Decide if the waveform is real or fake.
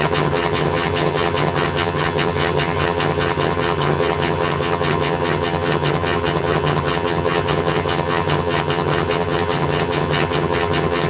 fake